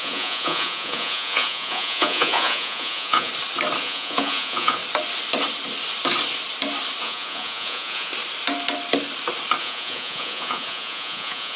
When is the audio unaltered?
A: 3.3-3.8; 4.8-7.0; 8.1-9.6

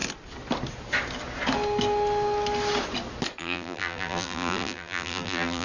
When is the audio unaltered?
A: 0.0-3.4